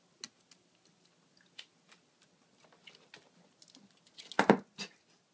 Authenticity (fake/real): real